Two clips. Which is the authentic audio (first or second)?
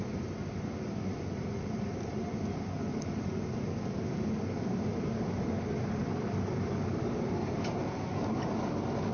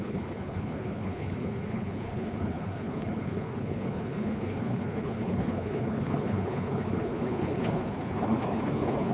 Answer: first